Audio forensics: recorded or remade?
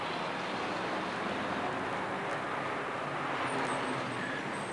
recorded